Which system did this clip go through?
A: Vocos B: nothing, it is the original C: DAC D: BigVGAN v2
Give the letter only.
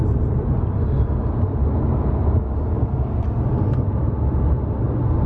B